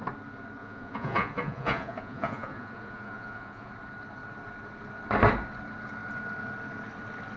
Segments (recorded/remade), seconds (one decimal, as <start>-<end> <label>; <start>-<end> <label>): 0.0-0.6 recorded; 0.6-3.7 remade; 3.7-7.4 recorded